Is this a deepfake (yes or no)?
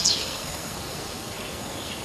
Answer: yes